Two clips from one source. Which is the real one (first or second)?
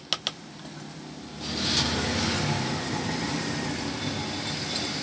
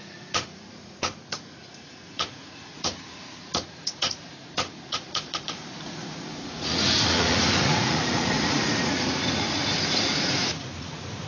first